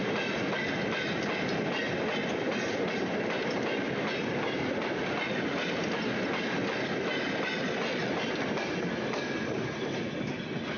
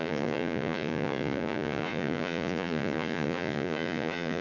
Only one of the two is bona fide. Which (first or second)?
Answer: first